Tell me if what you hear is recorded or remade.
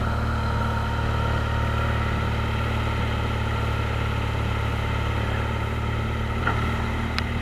recorded